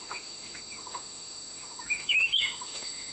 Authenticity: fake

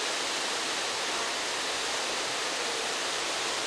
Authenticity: real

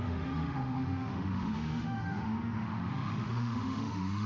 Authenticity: fake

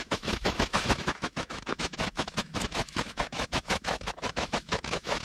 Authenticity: fake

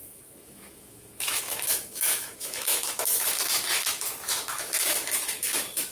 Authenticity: fake